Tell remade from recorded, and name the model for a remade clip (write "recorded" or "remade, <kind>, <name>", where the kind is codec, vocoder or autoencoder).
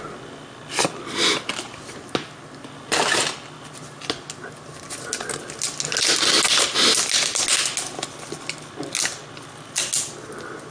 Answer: recorded